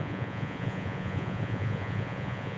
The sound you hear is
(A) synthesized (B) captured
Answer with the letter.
A